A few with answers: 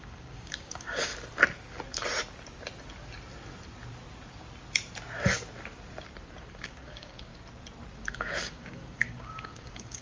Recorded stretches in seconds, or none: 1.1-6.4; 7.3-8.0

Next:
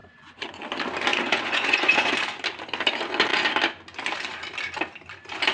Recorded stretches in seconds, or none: 0.6-1.1; 2.1-5.5

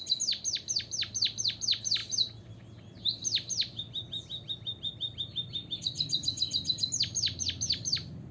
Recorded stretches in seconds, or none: 0.0-8.3

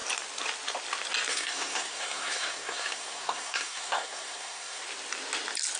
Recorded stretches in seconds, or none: 0.0-1.3; 4.8-5.8

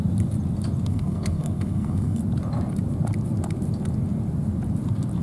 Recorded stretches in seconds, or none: 0.0-0.9; 2.2-5.2